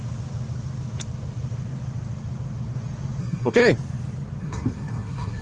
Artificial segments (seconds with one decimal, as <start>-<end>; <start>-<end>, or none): 3.2-3.6; 4.4-5.4